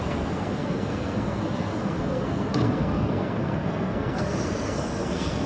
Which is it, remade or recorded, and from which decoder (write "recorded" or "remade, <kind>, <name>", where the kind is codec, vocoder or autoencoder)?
remade, codec, SNAC